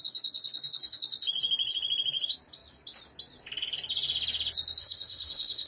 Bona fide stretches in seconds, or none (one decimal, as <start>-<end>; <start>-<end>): 0.0-4.8